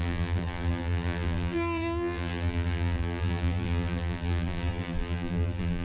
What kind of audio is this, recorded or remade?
remade